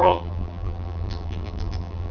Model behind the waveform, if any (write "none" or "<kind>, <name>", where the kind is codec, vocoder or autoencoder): vocoder, BigVGAN v2